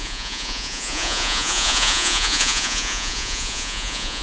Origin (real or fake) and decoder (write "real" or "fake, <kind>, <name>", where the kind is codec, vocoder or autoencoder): fake, vocoder, Vocos